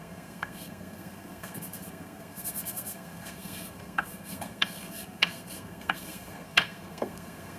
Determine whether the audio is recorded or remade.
remade